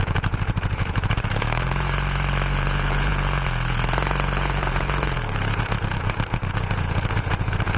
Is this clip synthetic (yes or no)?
yes